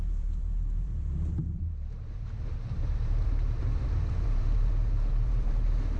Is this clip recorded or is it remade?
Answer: remade